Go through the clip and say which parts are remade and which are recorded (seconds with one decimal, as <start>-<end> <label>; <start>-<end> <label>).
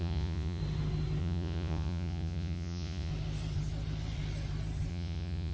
0.0-0.6 remade; 0.6-1.2 recorded; 1.2-3.1 remade; 3.1-4.9 recorded; 4.9-5.5 remade